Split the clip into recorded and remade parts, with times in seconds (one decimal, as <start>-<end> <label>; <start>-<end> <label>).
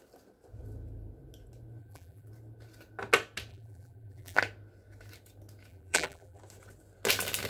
0.0-1.8 recorded; 1.8-2.3 remade; 2.3-3.5 recorded; 3.5-4.4 remade; 4.4-5.7 recorded; 5.7-6.4 remade; 6.4-7.5 recorded